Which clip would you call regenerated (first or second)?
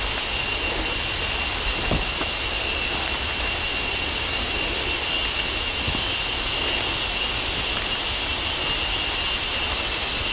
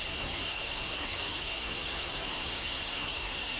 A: second